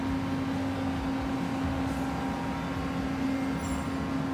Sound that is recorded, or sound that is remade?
recorded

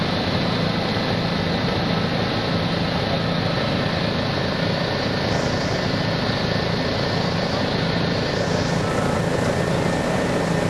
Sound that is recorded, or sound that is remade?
recorded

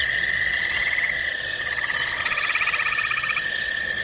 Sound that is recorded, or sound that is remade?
remade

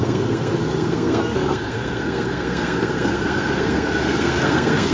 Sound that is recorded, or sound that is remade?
remade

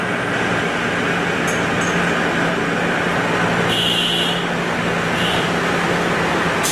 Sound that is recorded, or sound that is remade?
recorded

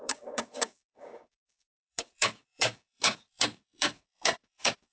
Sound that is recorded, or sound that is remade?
remade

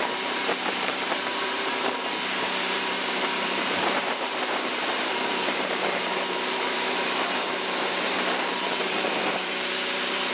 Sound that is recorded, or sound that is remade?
remade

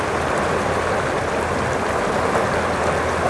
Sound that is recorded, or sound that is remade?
recorded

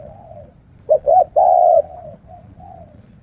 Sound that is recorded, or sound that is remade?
remade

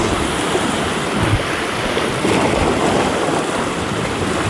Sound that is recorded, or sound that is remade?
recorded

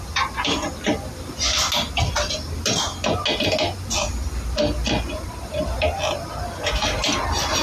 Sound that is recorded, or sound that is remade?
recorded